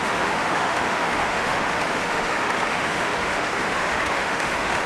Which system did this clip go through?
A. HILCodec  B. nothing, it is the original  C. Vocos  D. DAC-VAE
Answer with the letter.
D